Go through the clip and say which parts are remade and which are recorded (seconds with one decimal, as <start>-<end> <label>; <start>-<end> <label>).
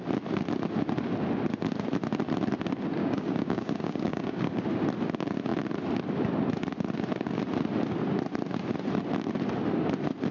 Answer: 0.0-3.0 recorded; 3.0-4.6 remade; 4.6-10.3 recorded